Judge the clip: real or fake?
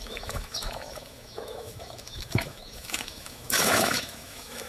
fake